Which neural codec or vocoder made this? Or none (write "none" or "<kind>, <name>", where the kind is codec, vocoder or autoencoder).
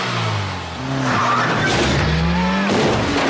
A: none